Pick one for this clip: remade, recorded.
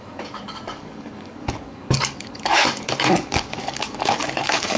remade